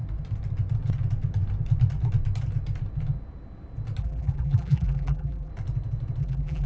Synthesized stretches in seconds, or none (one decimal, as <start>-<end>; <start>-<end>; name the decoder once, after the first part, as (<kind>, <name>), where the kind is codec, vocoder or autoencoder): 4.0-5.5 (vocoder, BigVGAN v2); 6.2-6.7